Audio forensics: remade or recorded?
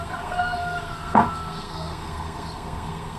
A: remade